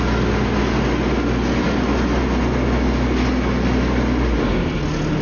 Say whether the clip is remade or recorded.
recorded